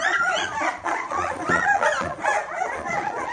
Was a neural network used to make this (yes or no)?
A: yes